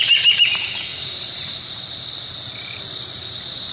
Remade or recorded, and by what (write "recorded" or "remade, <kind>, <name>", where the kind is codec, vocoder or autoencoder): remade, vocoder, BigVGAN v2